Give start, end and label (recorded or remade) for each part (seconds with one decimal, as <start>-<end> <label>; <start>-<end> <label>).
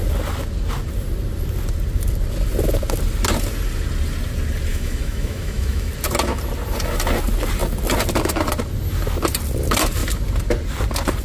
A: 0.0-4.7 recorded; 4.7-5.9 remade; 5.9-11.2 recorded